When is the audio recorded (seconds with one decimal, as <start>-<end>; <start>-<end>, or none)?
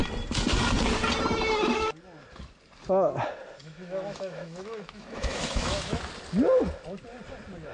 0.0-3.6; 6.0-7.7